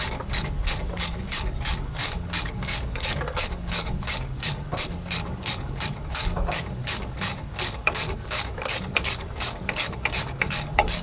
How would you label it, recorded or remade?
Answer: remade